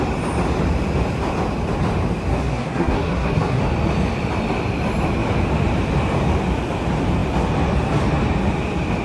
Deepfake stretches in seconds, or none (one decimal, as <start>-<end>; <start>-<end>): 2.3-3.6